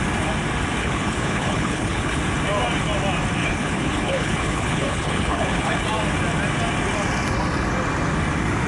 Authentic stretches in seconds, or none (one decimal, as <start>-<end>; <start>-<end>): 0.0-0.8; 2.2-3.4; 5.8-8.7